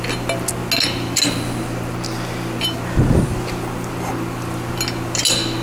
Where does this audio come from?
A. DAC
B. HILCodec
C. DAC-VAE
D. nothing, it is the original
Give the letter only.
D